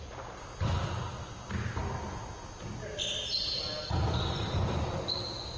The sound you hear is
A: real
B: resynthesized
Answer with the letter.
A